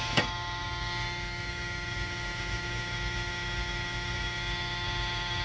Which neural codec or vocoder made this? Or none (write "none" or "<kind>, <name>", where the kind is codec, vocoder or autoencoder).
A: autoencoder, DAC-VAE